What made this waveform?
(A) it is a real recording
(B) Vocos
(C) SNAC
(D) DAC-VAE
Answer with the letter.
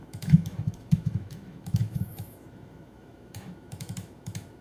D